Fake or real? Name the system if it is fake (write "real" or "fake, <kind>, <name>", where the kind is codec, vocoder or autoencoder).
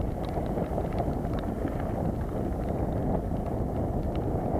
real